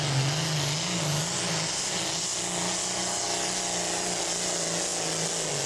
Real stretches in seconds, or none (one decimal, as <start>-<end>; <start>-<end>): 0.0-5.7